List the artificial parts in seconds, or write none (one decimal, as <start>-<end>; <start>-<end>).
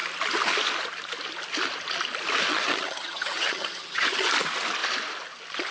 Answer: 2.5-4.3